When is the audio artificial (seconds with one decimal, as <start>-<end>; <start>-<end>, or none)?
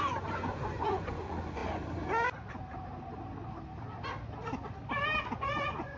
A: 0.0-1.6; 5.2-6.0